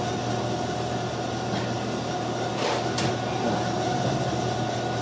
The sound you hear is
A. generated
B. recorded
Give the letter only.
B